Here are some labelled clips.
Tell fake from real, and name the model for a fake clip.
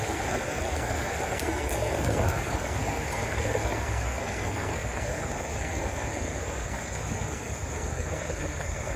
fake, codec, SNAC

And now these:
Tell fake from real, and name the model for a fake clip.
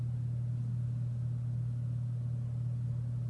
real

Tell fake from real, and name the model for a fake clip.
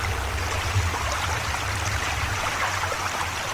real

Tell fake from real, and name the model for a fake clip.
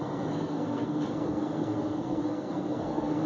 fake, codec, SNAC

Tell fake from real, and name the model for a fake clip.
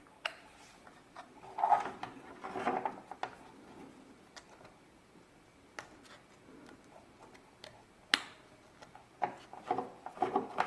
real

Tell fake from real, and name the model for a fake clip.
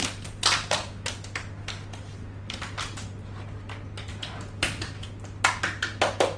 real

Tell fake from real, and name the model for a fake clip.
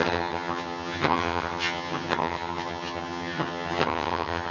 fake, vocoder, HiFi-GAN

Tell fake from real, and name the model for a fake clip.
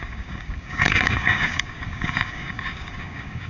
fake, codec, DAC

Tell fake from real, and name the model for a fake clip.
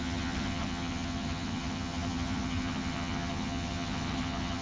fake, vocoder, HiFi-GAN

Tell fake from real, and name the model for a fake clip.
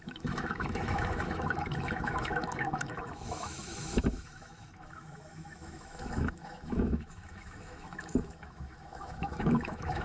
fake, autoencoder, DAC-VAE